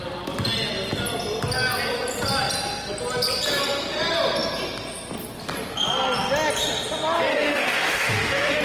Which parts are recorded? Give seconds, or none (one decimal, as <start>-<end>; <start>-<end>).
0.0-7.3